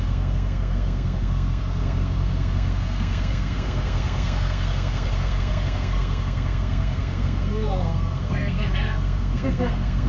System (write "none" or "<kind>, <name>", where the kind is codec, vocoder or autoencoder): codec, SNAC